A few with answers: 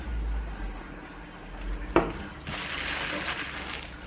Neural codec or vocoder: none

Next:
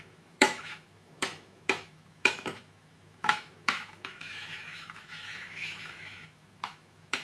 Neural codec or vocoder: autoencoder, DAC-VAE